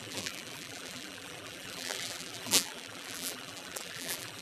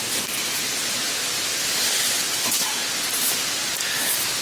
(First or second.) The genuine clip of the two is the second